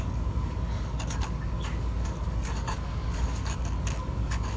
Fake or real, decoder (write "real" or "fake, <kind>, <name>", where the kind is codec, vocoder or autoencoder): fake, codec, DAC